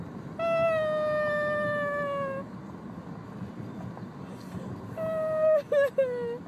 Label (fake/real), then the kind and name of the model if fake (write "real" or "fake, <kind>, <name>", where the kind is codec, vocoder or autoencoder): real